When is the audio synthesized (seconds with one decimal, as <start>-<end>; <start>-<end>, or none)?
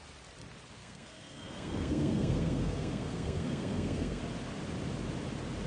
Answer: 0.8-4.2